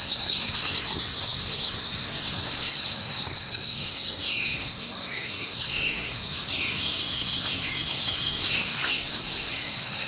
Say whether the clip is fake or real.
fake